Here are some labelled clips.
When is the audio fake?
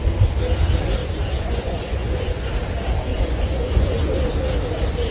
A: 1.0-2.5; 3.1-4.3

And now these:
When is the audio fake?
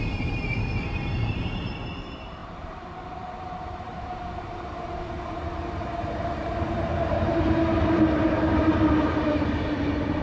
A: 0.0-10.2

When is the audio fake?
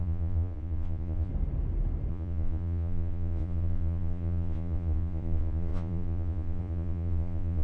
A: 0.0-1.3; 2.1-7.6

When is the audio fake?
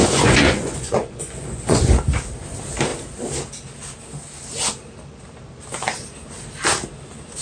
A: 0.0-2.0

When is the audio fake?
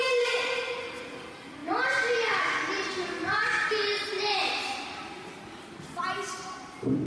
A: none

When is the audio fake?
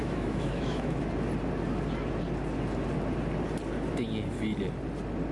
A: 0.0-1.0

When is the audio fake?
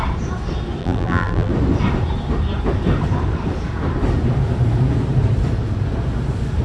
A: 0.8-1.5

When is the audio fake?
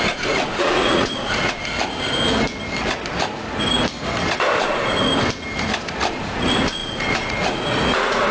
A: 0.0-1.6; 4.6-5.1; 6.1-8.3